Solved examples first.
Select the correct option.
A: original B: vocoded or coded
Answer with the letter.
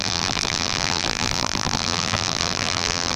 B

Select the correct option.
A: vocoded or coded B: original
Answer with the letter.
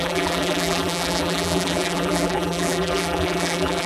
A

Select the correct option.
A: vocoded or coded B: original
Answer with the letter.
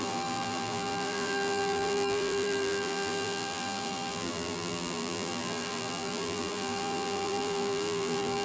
A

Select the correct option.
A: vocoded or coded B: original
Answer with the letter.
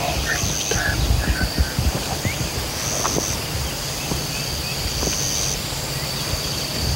B